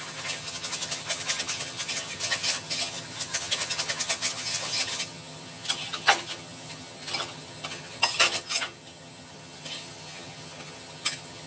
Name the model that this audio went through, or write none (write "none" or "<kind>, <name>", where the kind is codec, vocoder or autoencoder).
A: vocoder, HiFi-GAN